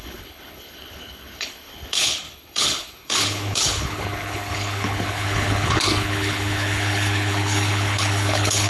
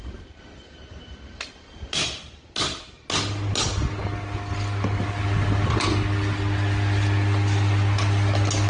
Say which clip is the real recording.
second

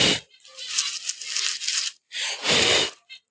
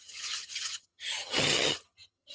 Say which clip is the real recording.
first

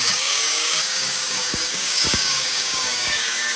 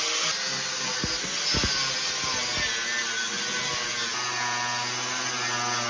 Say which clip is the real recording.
second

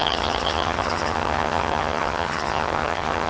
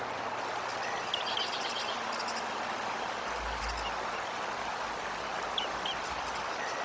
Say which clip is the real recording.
second